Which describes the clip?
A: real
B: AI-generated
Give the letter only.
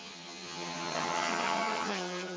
B